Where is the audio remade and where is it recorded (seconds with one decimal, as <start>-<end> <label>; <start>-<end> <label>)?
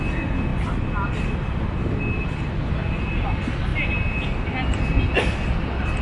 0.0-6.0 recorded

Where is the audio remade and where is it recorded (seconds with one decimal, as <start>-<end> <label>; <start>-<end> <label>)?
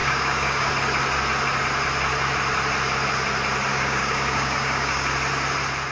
0.0-0.7 remade; 0.7-3.7 recorded; 3.7-5.1 remade; 5.1-5.9 recorded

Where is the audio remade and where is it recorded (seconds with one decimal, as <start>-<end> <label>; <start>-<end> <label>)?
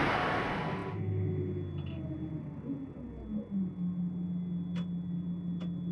0.0-5.9 recorded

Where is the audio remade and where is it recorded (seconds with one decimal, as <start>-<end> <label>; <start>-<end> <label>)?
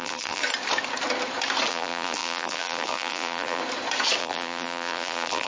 0.0-0.4 remade; 0.4-1.7 recorded; 1.7-3.6 remade; 3.6-4.2 recorded; 4.2-5.5 remade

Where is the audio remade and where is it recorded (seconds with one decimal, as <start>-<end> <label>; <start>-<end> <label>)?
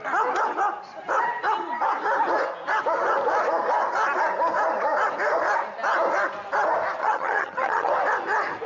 0.0-7.0 recorded; 7.0-7.9 remade; 7.9-8.7 recorded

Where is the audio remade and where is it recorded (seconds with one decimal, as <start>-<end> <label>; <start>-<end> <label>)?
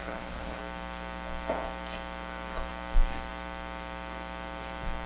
0.0-0.6 remade; 0.6-5.1 recorded